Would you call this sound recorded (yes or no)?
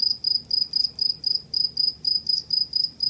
yes